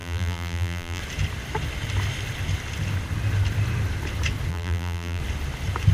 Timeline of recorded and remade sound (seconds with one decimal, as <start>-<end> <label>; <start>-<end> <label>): 0.0-1.0 remade; 1.0-4.5 recorded; 4.5-5.2 remade; 5.2-5.9 recorded